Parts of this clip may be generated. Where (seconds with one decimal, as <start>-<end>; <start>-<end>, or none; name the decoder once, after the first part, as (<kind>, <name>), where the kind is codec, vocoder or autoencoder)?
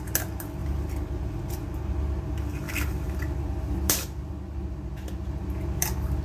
none